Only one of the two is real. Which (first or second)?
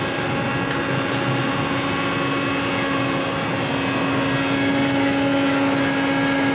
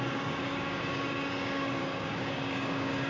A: first